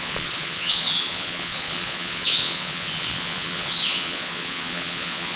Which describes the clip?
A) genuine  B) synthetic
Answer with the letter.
B